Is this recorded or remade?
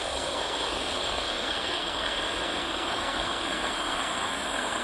remade